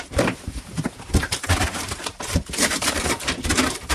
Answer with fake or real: fake